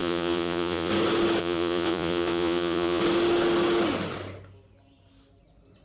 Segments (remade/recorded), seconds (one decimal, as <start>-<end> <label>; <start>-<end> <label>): 0.0-0.9 remade; 0.9-1.4 recorded; 1.4-3.0 remade; 3.0-5.8 recorded